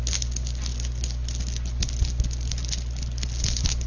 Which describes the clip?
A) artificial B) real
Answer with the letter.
B